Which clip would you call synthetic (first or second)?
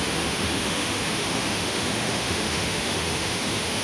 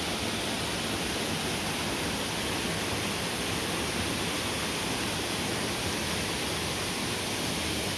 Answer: first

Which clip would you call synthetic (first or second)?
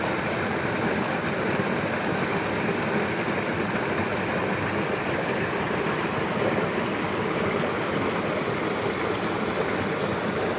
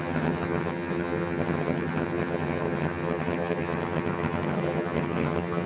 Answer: second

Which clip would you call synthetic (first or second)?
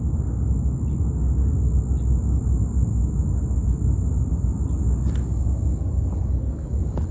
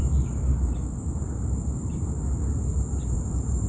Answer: second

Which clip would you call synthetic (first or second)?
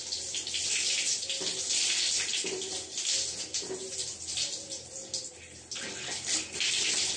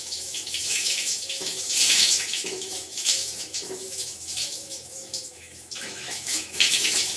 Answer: second